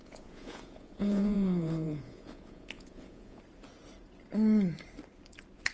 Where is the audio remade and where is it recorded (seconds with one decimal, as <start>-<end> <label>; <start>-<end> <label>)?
0.0-3.4 remade; 3.4-5.7 recorded